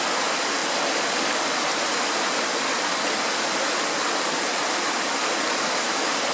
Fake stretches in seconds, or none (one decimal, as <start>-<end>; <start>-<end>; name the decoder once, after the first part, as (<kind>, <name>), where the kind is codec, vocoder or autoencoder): none